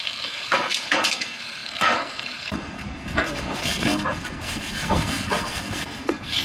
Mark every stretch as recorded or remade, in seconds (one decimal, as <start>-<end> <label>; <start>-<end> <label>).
0.0-6.4 remade